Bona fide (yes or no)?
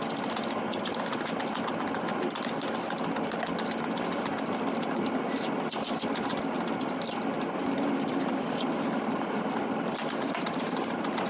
yes